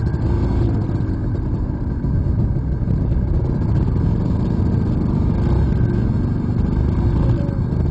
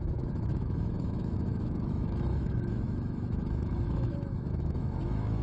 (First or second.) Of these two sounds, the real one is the first